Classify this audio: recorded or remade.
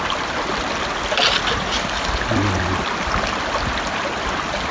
recorded